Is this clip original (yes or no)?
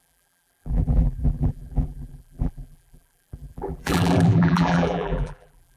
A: no